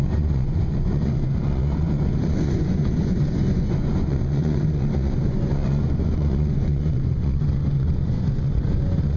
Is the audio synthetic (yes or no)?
yes